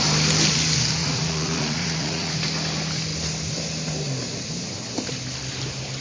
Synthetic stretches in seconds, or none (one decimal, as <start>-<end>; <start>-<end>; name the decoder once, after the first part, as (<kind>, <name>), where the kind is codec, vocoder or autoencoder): 1.0-2.3 (vocoder, Vocos)